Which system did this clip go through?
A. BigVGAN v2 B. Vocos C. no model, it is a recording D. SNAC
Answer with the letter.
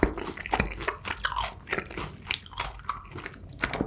C